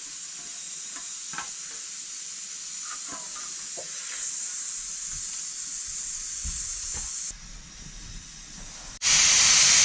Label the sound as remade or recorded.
recorded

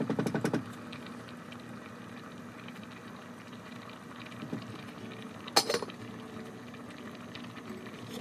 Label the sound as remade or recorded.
recorded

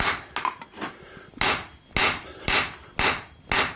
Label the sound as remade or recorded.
recorded